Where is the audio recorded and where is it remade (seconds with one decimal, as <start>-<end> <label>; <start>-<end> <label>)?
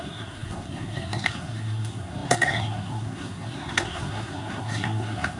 0.0-5.4 remade